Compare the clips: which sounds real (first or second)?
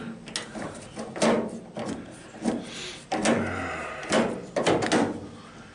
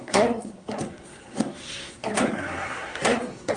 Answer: first